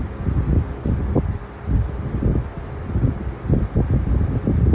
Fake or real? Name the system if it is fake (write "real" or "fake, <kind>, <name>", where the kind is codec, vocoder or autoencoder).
real